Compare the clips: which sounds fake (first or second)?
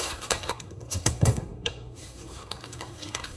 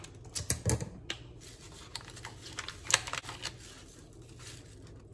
first